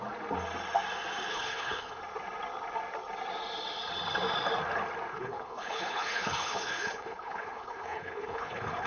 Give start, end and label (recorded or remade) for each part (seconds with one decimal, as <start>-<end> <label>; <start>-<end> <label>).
0.0-1.3 recorded; 1.3-2.0 remade; 2.0-5.1 recorded; 5.1-8.9 remade